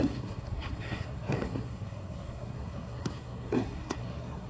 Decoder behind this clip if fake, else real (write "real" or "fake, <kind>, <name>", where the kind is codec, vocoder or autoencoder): fake, codec, SNAC